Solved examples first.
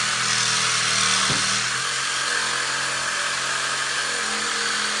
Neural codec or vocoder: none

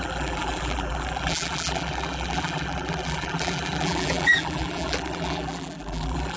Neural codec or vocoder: vocoder, BigVGAN v2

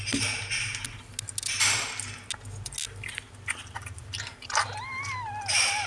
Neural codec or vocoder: none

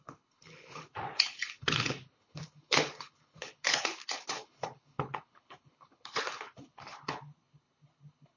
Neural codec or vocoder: codec, HILCodec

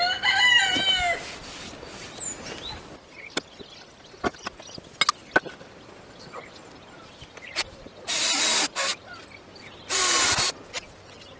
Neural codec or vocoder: none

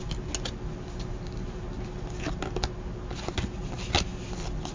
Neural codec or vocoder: none